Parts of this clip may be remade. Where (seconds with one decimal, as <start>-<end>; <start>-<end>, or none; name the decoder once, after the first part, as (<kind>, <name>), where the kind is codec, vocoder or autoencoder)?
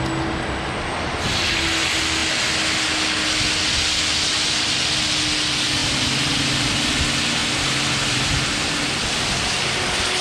7.4-8.7 (vocoder, BigVGAN v2)